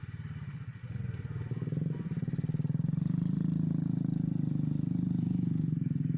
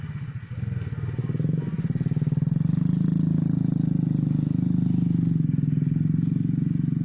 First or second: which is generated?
first